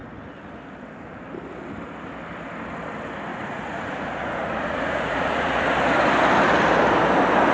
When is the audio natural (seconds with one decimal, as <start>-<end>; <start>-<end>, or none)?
0.0-3.3; 5.7-7.5